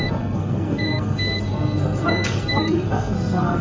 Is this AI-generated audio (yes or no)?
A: yes